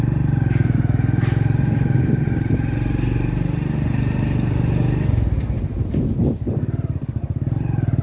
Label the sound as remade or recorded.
recorded